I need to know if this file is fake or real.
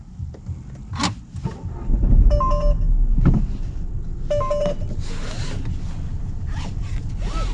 real